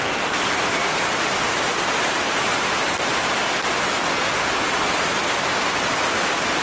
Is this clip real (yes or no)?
yes